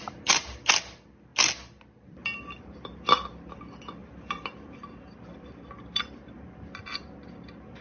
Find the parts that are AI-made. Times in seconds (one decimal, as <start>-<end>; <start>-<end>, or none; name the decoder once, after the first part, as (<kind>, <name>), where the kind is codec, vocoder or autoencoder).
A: 4.0-5.7 (vocoder, BigVGAN v2)